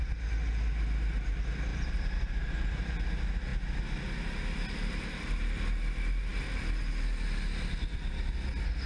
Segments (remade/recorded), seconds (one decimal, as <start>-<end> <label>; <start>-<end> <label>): 0.0-1.7 recorded; 1.7-2.9 remade; 2.9-8.9 recorded